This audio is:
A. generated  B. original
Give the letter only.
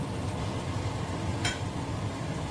B